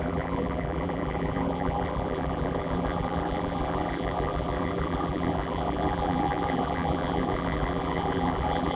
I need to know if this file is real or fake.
fake